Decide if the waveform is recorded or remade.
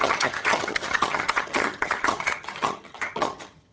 remade